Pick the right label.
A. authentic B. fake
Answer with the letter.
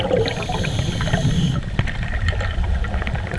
A